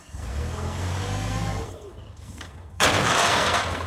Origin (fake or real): fake